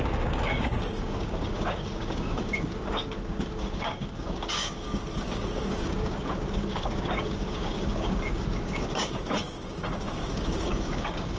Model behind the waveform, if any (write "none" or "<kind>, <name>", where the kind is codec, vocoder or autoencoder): codec, DAC